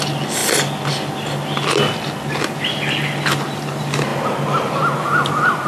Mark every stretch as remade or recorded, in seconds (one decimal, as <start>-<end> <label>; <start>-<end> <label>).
0.0-5.7 recorded